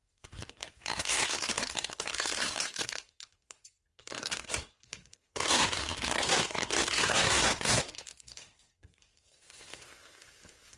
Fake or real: fake